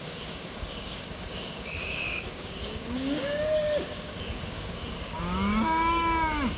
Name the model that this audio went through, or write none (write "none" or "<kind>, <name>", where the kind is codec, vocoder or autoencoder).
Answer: codec, DAC